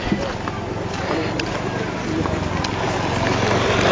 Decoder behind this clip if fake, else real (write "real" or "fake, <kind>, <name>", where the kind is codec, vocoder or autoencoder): real